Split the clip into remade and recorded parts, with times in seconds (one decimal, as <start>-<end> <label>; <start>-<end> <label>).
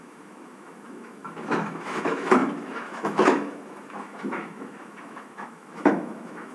0.0-6.5 remade